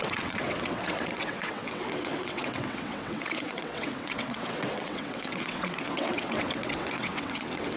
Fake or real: fake